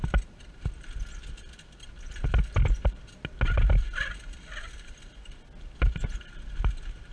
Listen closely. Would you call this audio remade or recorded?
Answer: recorded